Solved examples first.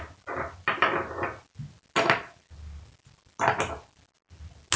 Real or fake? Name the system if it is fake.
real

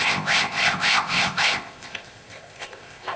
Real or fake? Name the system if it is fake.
fake, codec, ZipCodec